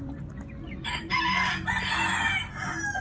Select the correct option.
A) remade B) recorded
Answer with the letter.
B